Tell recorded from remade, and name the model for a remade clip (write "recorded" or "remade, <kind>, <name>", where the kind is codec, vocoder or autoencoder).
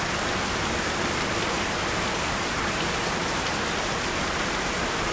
remade, vocoder, BigVGAN v2